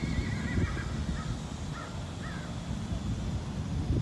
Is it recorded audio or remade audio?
recorded